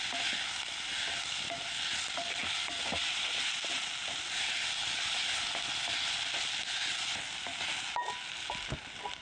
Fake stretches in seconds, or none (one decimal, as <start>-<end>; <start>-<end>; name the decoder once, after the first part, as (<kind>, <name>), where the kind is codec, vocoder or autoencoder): none

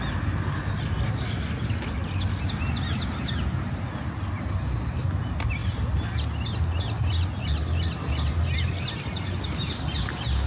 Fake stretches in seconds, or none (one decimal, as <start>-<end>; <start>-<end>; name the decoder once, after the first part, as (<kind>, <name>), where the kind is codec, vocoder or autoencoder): none

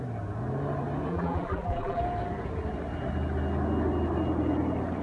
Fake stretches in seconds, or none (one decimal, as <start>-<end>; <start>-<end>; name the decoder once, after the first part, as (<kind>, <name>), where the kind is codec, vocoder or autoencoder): 1.1-2.0 (vocoder, BigVGAN v2)

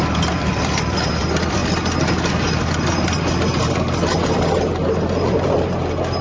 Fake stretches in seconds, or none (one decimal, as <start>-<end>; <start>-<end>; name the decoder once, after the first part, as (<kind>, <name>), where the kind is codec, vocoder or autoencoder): 0.0-1.6 (vocoder, BigVGAN v2); 5.3-6.2

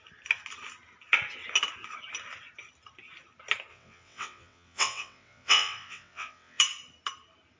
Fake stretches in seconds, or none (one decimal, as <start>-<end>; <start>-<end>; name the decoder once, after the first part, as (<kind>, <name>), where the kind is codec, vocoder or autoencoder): 3.7-6.6 (vocoder, WaveNeXt)

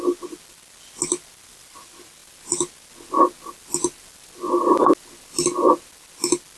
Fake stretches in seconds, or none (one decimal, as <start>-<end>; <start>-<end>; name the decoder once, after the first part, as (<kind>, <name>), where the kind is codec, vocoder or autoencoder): none

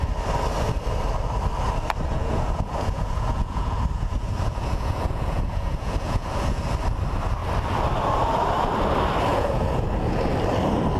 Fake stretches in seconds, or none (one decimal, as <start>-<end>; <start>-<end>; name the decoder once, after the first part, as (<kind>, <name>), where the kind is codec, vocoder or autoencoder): 2.1-6.6 (vocoder, Vocos); 9.3-9.9